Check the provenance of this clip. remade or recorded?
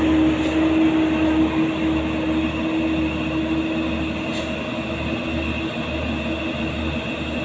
recorded